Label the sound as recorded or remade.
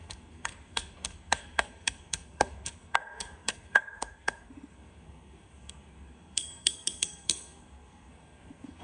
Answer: remade